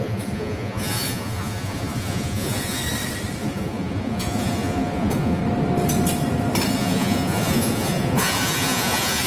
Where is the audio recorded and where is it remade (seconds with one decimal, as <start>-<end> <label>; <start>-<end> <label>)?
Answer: 0.0-2.8 remade; 2.8-3.4 recorded; 3.4-5.4 remade; 5.4-6.7 recorded; 6.7-9.3 remade